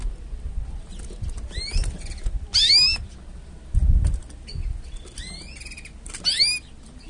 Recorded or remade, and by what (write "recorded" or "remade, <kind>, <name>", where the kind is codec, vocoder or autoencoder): recorded